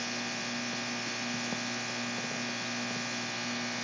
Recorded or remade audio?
recorded